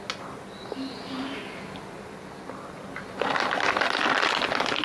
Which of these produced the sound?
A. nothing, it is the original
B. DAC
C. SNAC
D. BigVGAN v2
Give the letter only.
A